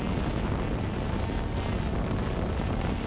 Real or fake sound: real